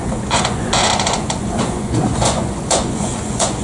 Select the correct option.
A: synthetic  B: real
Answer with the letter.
A